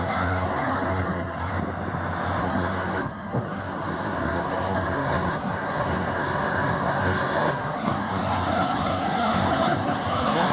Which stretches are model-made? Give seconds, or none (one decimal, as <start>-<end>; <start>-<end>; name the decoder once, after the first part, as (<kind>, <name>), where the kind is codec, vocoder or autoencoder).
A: 0.0-1.5 (codec, SNAC); 2.4-10.5